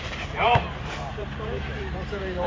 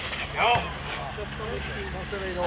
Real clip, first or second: second